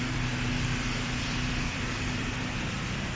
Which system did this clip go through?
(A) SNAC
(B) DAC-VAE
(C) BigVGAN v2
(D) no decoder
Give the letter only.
C